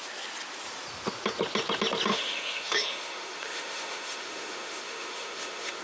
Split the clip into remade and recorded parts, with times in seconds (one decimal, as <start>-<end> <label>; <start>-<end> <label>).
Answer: 0.0-2.1 recorded; 2.1-5.8 remade